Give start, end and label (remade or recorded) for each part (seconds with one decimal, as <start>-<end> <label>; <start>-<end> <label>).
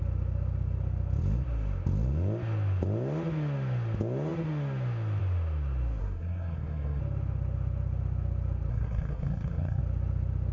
0.0-6.0 recorded; 6.0-7.0 remade; 7.0-8.7 recorded; 8.7-9.8 remade; 9.8-10.5 recorded